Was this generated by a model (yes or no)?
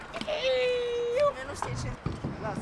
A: no